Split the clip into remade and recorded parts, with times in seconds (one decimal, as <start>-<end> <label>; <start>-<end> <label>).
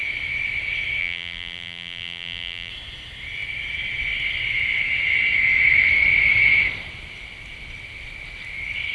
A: 0.0-1.0 recorded; 1.0-2.7 remade; 2.7-8.9 recorded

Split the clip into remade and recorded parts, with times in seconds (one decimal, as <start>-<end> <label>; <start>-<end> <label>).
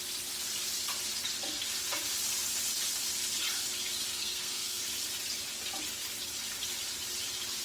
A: 0.0-4.1 recorded; 4.1-4.8 remade; 4.8-7.6 recorded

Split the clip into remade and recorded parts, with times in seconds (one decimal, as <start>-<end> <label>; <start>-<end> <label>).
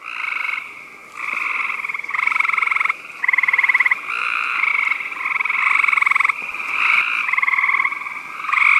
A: 0.0-4.2 recorded; 4.2-4.7 remade; 4.7-8.8 recorded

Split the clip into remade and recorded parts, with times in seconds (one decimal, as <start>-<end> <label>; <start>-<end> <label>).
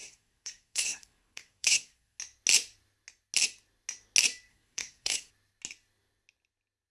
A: 0.0-2.2 remade; 2.2-4.5 recorded; 4.5-5.3 remade; 5.3-6.9 recorded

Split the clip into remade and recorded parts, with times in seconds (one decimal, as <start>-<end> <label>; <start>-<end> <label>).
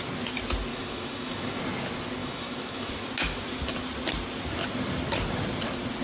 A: 0.0-0.7 recorded; 0.7-1.6 remade; 1.6-2.2 recorded; 2.2-2.9 remade; 2.9-6.0 recorded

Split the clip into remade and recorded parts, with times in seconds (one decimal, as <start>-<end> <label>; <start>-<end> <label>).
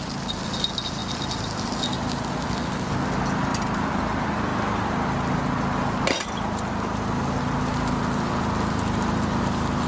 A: 0.0-9.9 recorded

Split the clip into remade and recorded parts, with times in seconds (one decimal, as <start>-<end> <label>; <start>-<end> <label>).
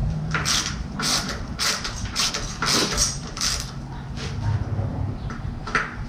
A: 0.0-2.3 remade; 2.3-2.8 recorded; 2.8-3.7 remade; 3.7-4.9 recorded; 4.9-5.6 remade; 5.6-6.1 recorded